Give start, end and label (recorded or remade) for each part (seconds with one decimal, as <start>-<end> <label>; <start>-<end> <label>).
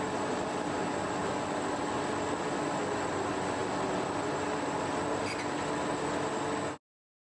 0.0-7.2 recorded